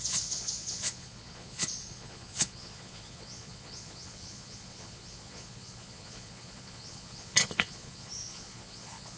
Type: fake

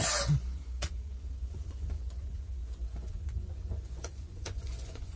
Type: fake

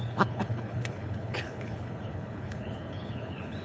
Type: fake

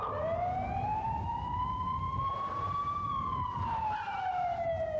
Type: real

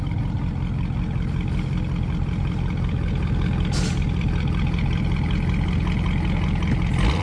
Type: real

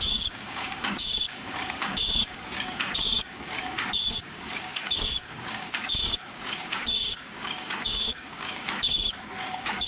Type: fake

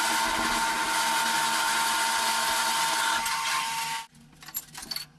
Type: real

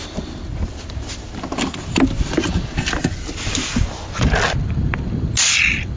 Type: real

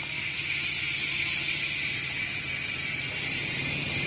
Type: real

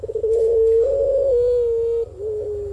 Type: real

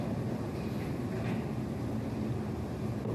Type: real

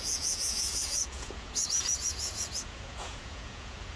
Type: fake